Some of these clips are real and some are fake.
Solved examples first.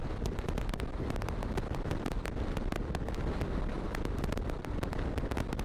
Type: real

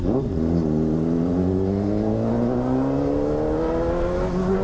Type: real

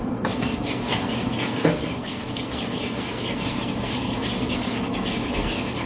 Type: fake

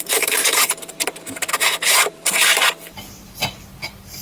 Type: fake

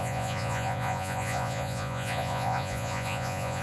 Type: fake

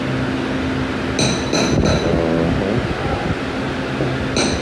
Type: real